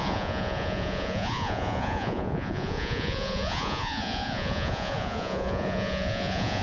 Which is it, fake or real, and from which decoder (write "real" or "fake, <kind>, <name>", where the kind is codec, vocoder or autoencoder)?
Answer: fake, vocoder, Vocos